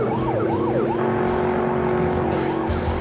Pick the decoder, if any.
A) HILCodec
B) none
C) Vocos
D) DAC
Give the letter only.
D